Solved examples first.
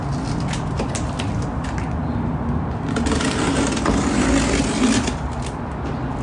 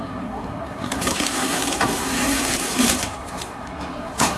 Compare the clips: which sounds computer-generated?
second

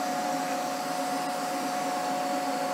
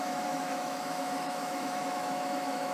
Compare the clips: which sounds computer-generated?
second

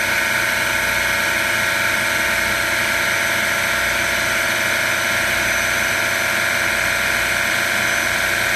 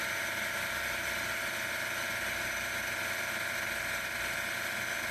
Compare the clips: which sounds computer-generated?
second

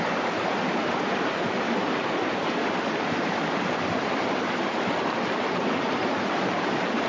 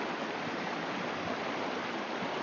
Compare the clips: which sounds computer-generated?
first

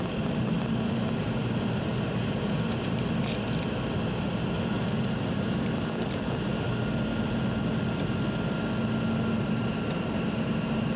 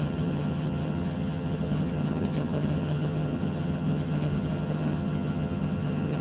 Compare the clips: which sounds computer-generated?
second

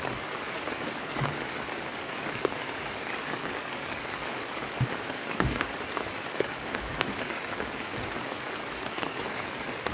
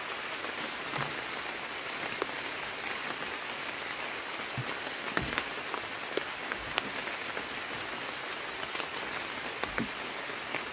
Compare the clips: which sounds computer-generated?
first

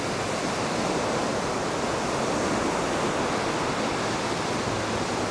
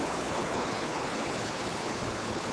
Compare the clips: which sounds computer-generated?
second